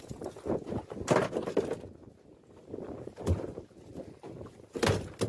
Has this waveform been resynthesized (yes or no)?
no